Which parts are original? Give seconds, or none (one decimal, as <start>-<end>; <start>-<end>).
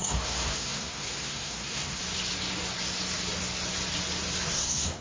2.0-4.5